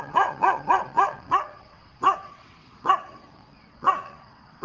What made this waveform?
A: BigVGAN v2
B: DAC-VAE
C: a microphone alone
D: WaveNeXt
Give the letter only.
D